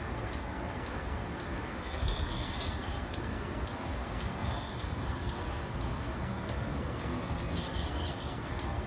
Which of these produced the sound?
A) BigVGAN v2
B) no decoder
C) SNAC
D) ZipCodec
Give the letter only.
C